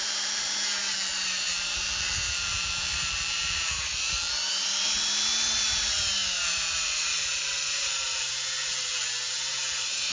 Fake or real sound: fake